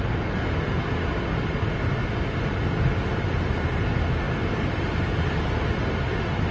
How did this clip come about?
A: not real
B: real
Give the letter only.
B